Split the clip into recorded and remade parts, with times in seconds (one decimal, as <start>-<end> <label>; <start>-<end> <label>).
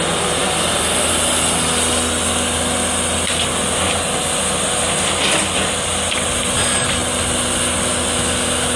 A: 0.0-8.8 recorded